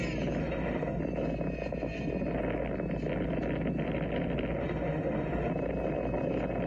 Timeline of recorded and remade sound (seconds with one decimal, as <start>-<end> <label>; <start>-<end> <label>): 0.0-0.4 recorded; 0.4-1.0 remade; 1.0-4.6 recorded; 4.6-5.5 remade; 5.5-6.7 recorded